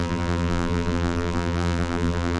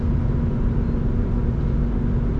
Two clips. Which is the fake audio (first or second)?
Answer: first